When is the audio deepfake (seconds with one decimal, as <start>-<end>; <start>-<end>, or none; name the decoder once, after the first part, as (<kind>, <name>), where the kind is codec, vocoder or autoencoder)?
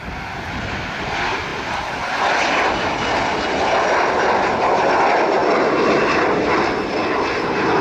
none